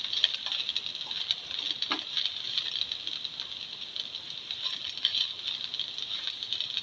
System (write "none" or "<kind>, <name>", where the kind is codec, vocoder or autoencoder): none